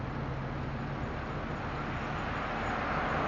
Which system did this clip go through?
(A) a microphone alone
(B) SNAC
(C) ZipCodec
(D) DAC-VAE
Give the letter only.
A